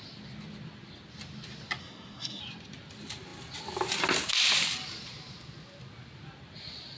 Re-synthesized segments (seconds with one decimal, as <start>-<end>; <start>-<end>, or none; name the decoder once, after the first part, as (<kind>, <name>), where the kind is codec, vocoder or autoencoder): 1.8-2.4 (codec, SNAC)